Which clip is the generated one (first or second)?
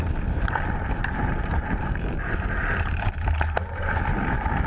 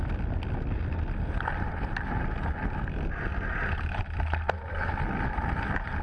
first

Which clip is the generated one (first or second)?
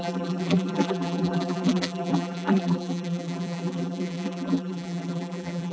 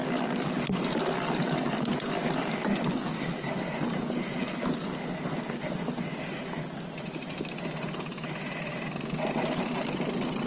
first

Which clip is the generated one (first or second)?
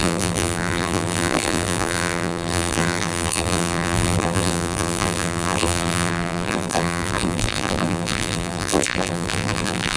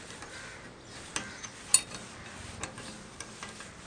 first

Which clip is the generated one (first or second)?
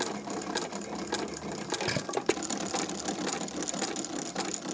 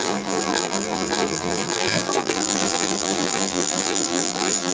second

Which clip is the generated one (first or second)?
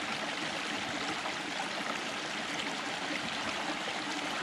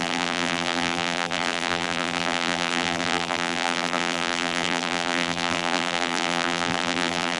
second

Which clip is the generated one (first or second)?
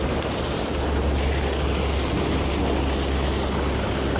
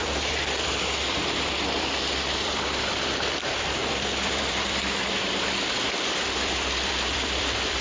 second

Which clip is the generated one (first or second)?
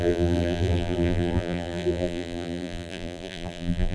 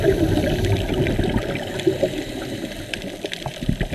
first